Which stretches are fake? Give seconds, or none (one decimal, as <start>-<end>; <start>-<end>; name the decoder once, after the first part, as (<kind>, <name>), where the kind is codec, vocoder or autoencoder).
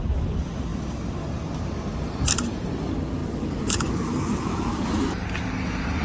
0.7-2.7 (vocoder, BigVGAN v2); 3.2-4.7